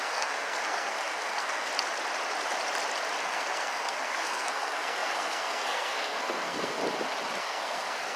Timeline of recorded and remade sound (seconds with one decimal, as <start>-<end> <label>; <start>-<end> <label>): 0.0-1.7 remade; 1.7-3.2 recorded; 3.2-6.8 remade; 6.8-7.4 recorded; 7.4-8.2 remade